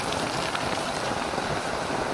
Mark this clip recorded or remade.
remade